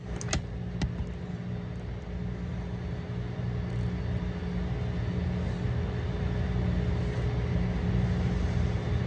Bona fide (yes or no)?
yes